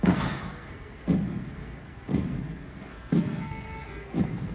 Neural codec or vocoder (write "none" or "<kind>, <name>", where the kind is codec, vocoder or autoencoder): codec, SNAC